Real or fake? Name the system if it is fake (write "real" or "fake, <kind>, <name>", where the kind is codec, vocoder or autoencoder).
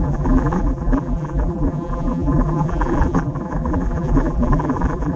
fake, vocoder, BigVGAN v2